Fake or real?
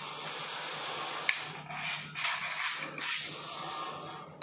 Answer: real